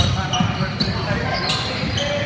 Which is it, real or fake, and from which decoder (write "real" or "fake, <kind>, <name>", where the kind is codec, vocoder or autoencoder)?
real